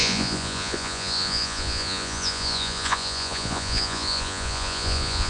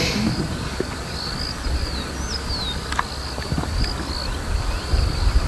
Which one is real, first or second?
second